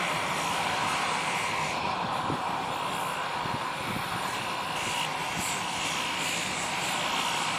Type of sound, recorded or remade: recorded